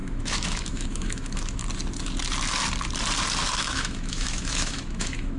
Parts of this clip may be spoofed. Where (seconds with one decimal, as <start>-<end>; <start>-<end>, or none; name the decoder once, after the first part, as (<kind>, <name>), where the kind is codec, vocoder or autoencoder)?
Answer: 0.0-1.6 (autoencoder, DAC-VAE); 3.6-5.4